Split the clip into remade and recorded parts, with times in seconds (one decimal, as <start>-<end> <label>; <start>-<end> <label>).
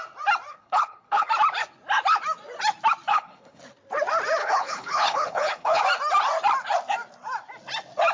0.0-0.5 recorded; 0.5-1.3 remade; 1.3-3.1 recorded; 3.1-3.6 remade; 3.6-4.4 recorded; 4.4-5.8 remade; 5.8-8.1 recorded